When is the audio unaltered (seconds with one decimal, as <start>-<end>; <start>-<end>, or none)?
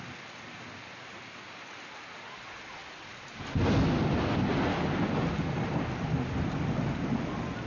0.0-7.7